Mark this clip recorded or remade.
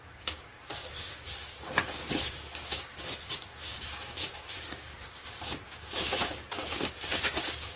remade